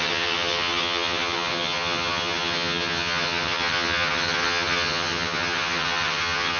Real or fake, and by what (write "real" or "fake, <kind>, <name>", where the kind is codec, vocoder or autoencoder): fake, vocoder, HiFi-GAN